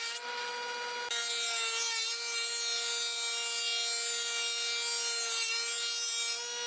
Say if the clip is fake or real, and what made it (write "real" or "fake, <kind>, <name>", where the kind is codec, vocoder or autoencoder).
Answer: real